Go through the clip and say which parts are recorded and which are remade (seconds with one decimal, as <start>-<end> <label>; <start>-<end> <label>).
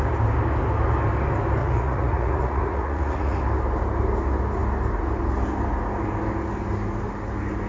0.0-1.6 recorded; 1.6-3.4 remade; 3.4-7.7 recorded